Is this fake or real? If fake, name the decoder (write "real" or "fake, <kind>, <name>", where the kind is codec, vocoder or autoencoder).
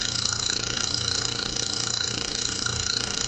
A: fake, codec, DAC